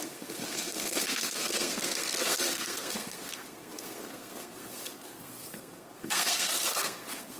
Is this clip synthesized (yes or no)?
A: yes